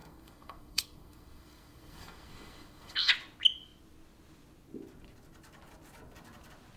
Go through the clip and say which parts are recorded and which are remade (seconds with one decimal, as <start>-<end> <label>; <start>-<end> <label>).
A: 0.0-3.1 remade; 3.1-6.8 recorded